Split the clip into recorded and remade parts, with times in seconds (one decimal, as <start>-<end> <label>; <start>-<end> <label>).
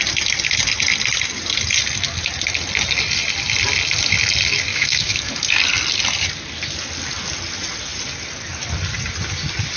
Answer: 0.0-4.7 recorded; 4.7-5.3 remade; 5.3-9.8 recorded